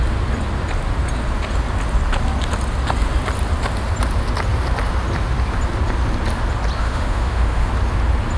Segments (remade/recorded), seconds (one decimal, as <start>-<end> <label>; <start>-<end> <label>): 0.0-6.8 recorded; 6.8-7.7 remade; 7.7-8.4 recorded

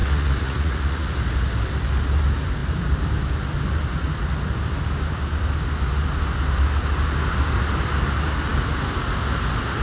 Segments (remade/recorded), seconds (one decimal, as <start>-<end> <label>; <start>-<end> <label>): 0.0-1.1 remade; 1.1-9.8 recorded

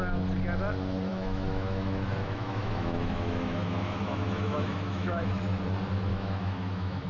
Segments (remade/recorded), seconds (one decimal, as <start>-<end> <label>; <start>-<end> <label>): 0.0-1.1 recorded; 1.1-5.4 remade; 5.4-6.1 recorded; 6.1-7.1 remade